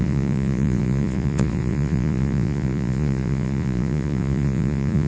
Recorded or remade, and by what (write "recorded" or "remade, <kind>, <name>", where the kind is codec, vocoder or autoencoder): remade, vocoder, Vocos